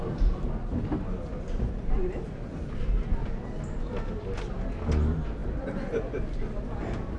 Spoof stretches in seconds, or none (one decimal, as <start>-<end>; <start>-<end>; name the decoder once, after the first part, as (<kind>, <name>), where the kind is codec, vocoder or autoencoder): none